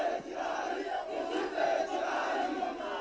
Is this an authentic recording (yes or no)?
yes